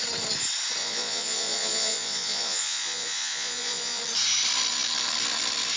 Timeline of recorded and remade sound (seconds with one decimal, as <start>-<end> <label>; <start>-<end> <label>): 0.0-0.8 recorded; 0.8-4.0 remade; 4.0-5.8 recorded